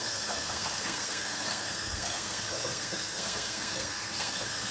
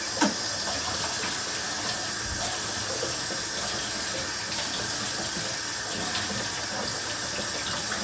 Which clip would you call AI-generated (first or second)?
first